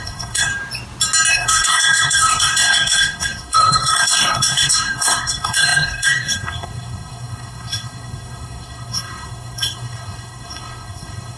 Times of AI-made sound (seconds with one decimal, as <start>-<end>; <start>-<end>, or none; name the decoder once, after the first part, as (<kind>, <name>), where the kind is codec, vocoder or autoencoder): 0.0-0.5 (codec, SNAC); 1.3-11.4